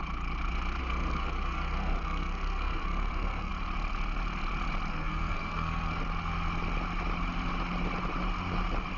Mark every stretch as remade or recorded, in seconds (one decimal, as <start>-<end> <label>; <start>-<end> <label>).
0.0-0.8 recorded; 0.8-3.5 remade; 3.5-4.9 recorded; 4.9-6.0 remade; 6.0-9.0 recorded